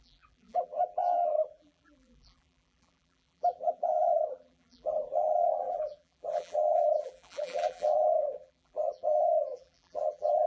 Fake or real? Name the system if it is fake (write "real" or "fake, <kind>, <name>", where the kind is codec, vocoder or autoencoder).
fake, vocoder, BigVGAN v2